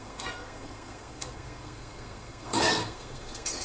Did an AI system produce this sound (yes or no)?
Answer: yes